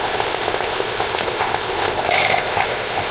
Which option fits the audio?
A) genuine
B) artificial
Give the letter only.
B